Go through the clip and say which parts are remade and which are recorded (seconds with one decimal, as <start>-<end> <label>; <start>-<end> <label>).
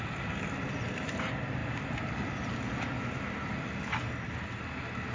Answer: 0.0-5.1 recorded